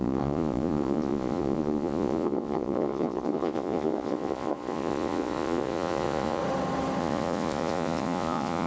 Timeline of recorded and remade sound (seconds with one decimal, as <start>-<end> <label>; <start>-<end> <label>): 0.0-6.4 remade; 6.4-7.0 recorded; 7.0-8.7 remade